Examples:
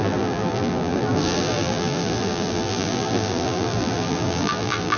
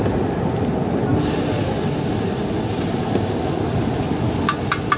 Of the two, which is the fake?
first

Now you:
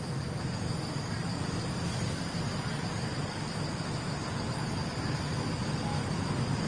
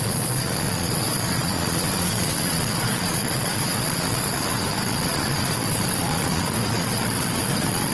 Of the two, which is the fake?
second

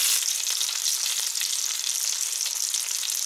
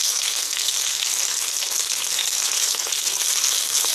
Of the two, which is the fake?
second